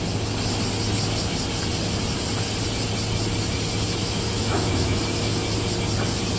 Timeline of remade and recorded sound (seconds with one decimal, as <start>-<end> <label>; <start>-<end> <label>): 0.0-4.0 recorded; 4.0-5.0 remade; 5.0-6.4 recorded